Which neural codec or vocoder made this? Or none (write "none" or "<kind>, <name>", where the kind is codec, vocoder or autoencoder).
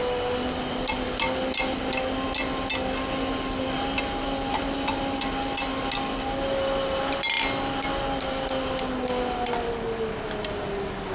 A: none